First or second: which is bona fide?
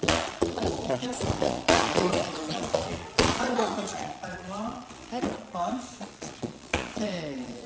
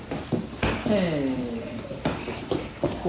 second